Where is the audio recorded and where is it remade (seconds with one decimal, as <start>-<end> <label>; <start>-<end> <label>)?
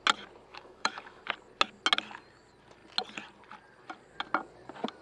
0.0-0.5 recorded; 0.5-1.2 remade; 1.2-5.0 recorded